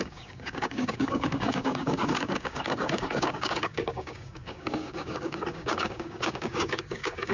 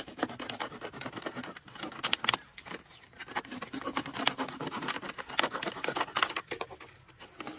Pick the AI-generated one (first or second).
first